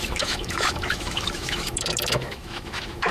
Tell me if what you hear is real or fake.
fake